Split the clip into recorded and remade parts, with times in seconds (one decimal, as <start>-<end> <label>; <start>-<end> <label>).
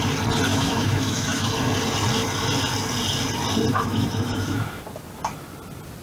0.0-0.5 recorded; 0.5-1.5 remade; 1.5-3.7 recorded; 3.7-4.8 remade; 4.8-6.0 recorded